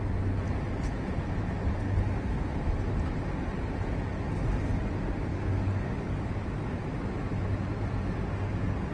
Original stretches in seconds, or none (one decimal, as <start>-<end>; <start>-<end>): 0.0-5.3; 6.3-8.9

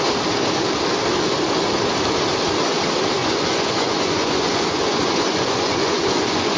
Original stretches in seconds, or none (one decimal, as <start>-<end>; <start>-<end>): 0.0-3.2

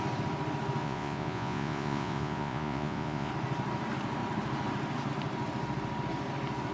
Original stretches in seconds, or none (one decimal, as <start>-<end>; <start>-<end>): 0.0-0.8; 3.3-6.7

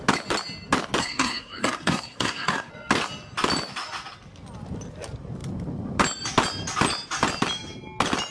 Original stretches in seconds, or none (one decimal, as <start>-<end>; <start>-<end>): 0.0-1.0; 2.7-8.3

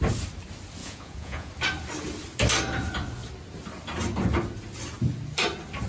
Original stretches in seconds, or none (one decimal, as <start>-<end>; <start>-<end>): 0.0-0.8; 1.5-5.9

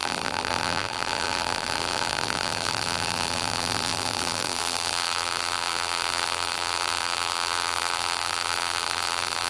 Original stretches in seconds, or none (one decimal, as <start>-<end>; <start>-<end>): none